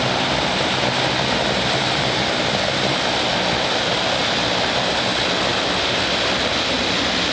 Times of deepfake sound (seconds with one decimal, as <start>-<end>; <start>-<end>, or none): none